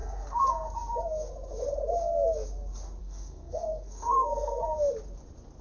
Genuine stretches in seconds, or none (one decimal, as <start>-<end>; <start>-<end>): 0.0-3.0; 4.6-5.6